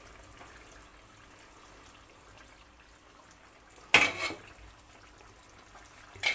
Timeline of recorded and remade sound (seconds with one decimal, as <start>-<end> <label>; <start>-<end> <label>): 0.0-6.3 recorded